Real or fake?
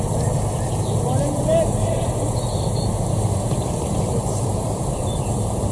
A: fake